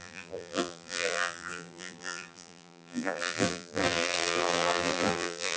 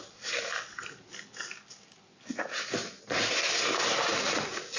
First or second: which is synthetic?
first